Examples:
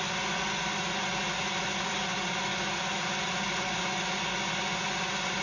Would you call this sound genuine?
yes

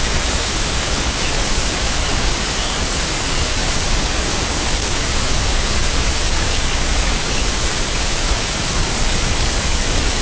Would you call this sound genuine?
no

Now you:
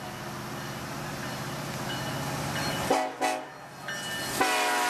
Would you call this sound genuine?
yes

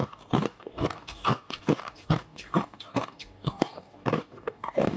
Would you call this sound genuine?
no